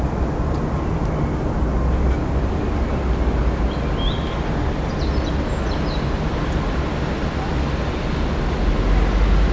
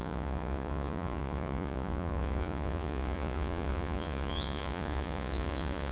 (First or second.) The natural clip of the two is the first